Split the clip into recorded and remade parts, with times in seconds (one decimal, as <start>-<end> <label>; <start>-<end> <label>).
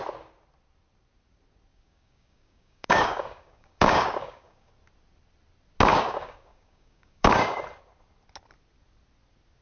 0.0-1.7 recorded; 1.7-4.7 remade; 4.7-5.9 recorded; 5.9-7.6 remade; 7.6-9.6 recorded